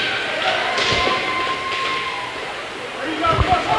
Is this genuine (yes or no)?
yes